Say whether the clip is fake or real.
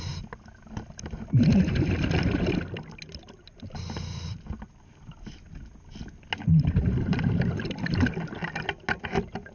real